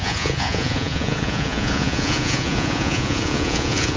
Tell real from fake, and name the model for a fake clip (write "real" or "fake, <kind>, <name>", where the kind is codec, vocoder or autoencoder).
fake, vocoder, Vocos